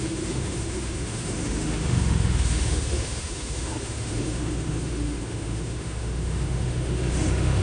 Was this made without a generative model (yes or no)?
no